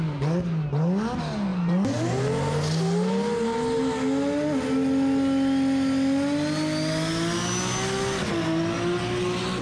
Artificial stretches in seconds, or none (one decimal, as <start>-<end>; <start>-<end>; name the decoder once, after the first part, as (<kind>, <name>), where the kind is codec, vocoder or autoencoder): none